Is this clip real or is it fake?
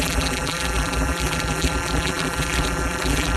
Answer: fake